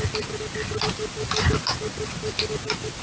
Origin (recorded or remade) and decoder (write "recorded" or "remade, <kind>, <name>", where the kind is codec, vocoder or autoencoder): recorded